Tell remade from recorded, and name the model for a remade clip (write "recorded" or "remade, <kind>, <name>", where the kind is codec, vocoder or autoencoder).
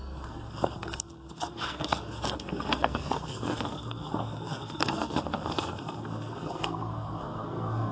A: remade, codec, SNAC